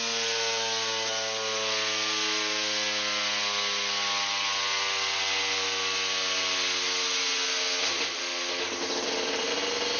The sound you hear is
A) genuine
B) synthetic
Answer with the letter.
A